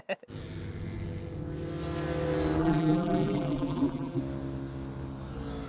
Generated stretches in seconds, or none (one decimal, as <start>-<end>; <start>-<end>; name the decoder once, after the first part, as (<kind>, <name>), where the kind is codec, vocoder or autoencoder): 2.6-4.2 (vocoder, BigVGAN v2)